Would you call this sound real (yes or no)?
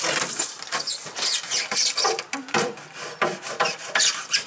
yes